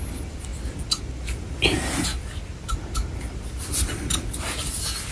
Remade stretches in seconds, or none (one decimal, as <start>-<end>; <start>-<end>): none